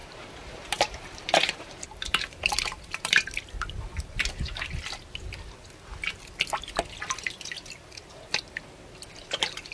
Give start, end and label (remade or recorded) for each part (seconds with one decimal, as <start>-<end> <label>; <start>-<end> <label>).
0.0-4.6 remade; 4.6-9.7 recorded